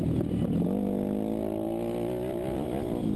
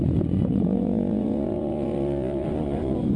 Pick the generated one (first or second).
second